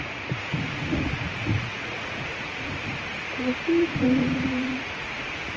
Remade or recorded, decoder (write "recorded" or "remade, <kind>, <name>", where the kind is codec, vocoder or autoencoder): remade, vocoder, Vocos